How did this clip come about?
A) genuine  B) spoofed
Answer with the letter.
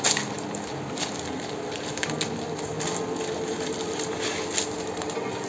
A